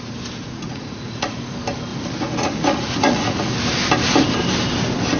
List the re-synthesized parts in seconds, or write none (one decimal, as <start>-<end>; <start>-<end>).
0.4-1.4; 1.9-3.5